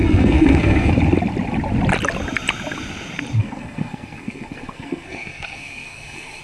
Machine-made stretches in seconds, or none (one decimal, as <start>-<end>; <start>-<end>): 0.0-0.9; 3.4-6.4